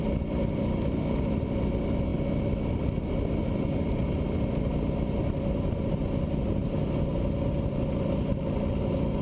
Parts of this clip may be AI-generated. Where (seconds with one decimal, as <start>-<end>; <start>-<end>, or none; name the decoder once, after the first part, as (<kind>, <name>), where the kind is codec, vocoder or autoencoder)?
none